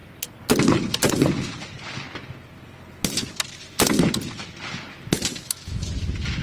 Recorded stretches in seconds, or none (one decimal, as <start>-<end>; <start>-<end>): 0.0-5.3; 5.9-6.4